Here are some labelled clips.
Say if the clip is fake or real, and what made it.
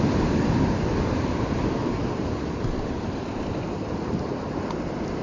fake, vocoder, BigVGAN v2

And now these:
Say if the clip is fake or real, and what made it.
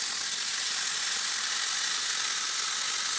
real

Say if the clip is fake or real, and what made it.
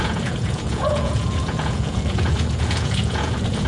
fake, vocoder, Vocos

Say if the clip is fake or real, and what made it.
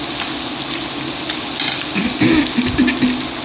real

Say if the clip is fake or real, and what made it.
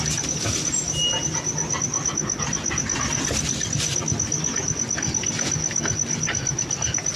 real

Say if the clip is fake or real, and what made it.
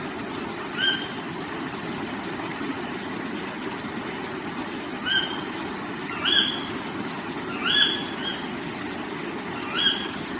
real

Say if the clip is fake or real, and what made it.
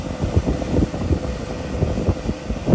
real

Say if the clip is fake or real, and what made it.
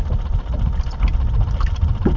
fake, vocoder, BigVGAN v2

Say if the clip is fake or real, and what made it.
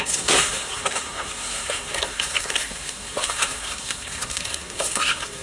fake, codec, SNAC